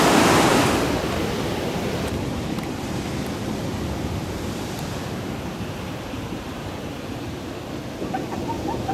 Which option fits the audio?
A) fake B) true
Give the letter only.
A